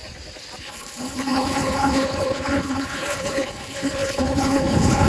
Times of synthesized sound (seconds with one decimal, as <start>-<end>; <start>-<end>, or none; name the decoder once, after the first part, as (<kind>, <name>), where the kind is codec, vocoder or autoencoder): 0.6-5.1 (codec, HILCodec)